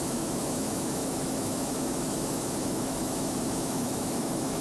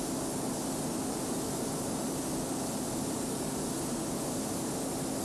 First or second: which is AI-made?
first